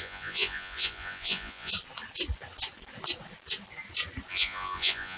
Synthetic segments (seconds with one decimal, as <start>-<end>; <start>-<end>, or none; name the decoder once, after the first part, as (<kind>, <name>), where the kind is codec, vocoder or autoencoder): 0.0-1.7 (vocoder, Vocos); 4.3-5.2